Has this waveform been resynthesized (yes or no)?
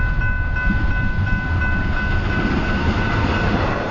no